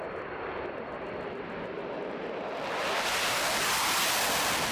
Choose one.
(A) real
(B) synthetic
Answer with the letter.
A